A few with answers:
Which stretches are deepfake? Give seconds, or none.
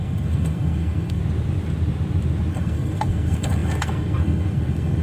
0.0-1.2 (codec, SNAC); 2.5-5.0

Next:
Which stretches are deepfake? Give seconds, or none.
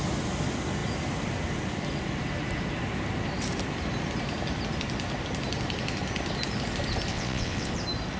7.1-7.7 (vocoder, WaveNeXt)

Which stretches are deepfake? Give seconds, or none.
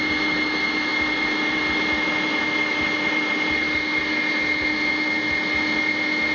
none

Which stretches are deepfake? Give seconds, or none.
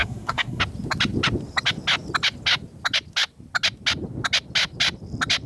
0.0-0.6 (codec, SNAC)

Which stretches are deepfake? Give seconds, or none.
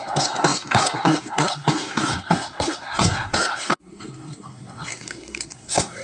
0.0-6.0 (codec, SNAC)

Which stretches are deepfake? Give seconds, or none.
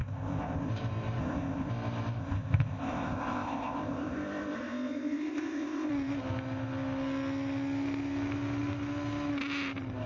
0.0-0.7 (codec, ZipCodec); 1.2-1.7; 2.2-5.9